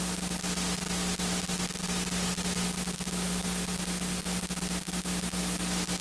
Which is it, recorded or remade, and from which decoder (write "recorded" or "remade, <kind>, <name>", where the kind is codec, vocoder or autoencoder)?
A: recorded